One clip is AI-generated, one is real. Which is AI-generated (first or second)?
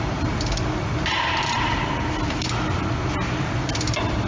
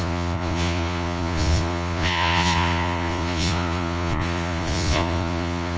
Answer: second